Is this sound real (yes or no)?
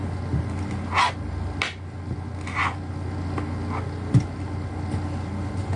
yes